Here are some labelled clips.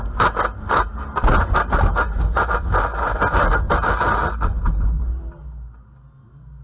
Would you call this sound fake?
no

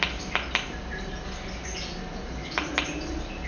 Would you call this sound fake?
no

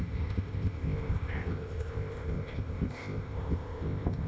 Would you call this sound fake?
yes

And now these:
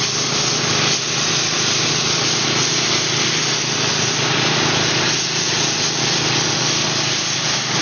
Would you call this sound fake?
no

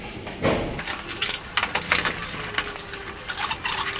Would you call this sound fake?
no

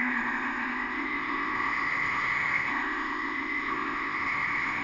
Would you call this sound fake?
yes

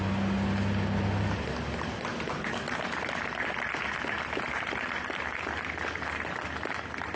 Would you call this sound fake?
no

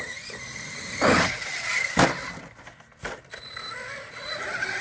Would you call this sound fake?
no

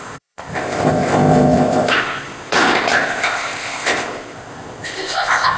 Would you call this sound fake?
yes